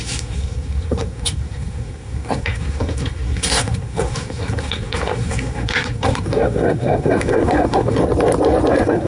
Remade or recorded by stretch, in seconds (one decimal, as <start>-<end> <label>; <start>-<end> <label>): 0.0-8.0 remade; 8.0-8.7 recorded; 8.7-9.1 remade